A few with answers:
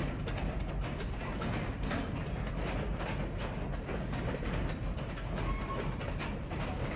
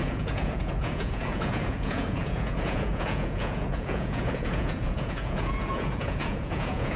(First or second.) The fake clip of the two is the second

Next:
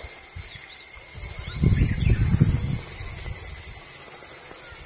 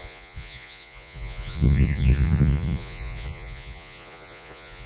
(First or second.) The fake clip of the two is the second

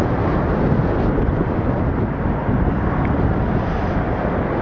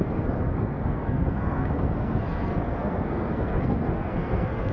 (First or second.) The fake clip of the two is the second